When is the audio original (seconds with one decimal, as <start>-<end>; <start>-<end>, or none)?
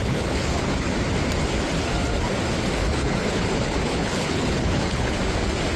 0.9-2.8; 5.1-5.8